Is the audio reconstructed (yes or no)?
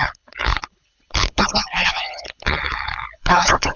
yes